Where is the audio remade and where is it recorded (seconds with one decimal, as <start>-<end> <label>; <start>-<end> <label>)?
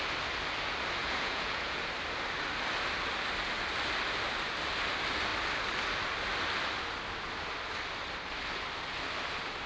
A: 0.0-1.0 recorded; 1.0-1.9 remade; 1.9-9.7 recorded